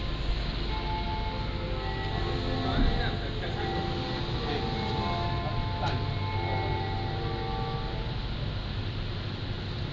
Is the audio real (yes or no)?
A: yes